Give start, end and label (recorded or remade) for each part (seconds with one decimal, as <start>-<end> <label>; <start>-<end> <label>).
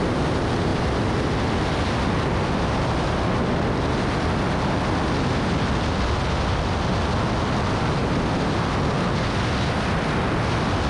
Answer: 0.0-10.9 recorded